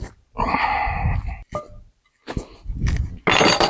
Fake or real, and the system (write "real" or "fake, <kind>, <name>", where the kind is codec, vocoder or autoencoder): real